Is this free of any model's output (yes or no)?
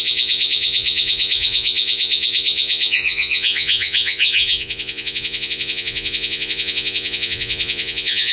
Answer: no